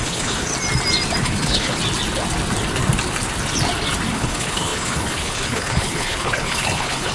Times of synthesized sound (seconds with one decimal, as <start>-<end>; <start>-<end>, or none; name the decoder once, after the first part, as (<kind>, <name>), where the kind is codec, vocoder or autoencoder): 0.0-0.5 (codec, HILCodec); 1.2-1.8; 4.1-7.1